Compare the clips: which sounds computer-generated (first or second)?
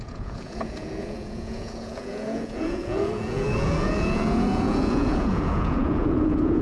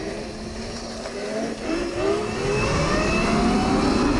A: first